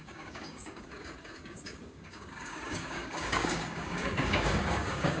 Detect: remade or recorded remade